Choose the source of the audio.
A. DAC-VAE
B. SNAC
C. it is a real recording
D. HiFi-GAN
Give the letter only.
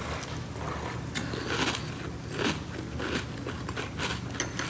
C